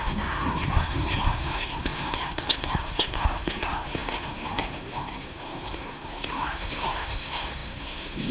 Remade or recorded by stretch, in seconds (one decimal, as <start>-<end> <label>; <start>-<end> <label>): 0.0-8.3 remade